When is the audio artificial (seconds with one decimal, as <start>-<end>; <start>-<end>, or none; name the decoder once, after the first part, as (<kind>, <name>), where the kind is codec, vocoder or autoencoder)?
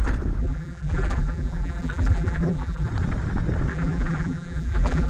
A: 0.4-2.9 (vocoder, BigVGAN v2); 3.7-5.1